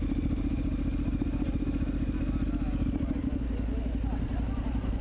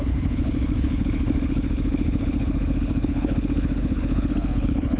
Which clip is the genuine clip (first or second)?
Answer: first